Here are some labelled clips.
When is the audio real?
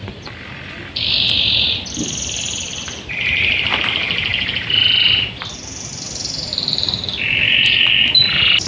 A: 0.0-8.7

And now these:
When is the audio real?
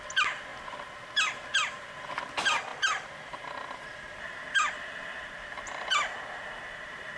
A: 0.0-7.2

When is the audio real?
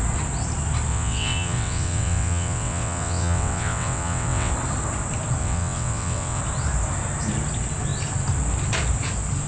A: 0.0-0.9; 4.5-5.4; 6.4-9.5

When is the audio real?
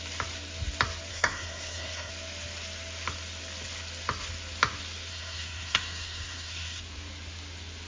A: 0.0-1.1; 2.1-5.1; 6.8-7.9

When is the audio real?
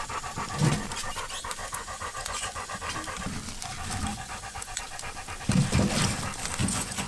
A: 0.0-1.6; 2.9-4.1; 4.8-6.6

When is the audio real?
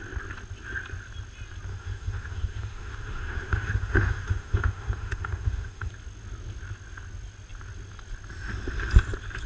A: 0.0-1.7; 5.9-9.5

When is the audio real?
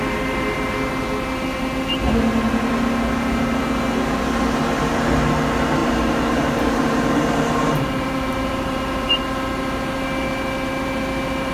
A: 0.0-5.8; 9.2-11.5